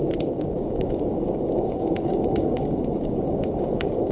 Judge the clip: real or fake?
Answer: fake